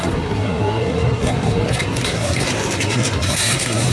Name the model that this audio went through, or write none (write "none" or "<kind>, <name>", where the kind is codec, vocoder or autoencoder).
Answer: codec, SNAC